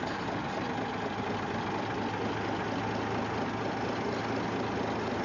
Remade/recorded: recorded